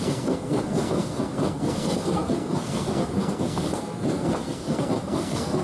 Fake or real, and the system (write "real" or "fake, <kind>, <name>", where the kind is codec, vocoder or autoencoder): fake, codec, SNAC